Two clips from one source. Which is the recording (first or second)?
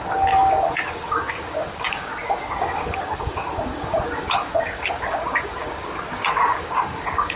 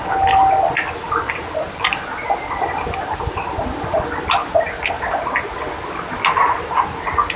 second